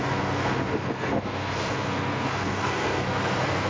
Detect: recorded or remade remade